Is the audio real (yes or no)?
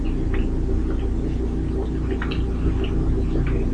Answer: yes